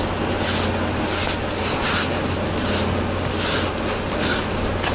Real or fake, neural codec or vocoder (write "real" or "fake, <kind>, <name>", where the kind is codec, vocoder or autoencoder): real